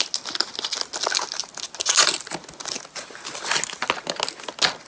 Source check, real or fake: real